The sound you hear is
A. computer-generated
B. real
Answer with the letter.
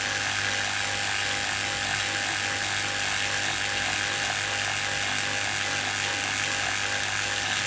B